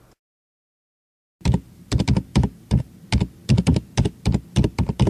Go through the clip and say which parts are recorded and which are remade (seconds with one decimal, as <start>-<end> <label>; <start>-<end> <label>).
0.0-2.3 recorded; 2.3-2.8 remade; 2.8-5.1 recorded